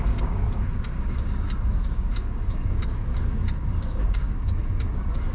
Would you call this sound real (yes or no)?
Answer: no